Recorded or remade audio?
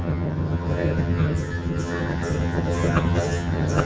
remade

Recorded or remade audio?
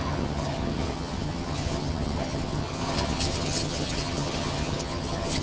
remade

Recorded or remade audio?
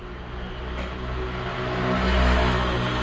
recorded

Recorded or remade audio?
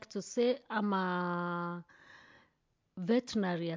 recorded